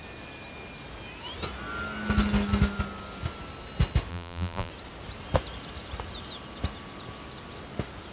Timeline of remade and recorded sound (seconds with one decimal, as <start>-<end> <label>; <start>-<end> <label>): 0.0-4.1 recorded; 4.1-4.7 remade; 4.7-8.1 recorded